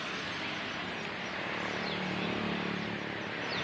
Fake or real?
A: fake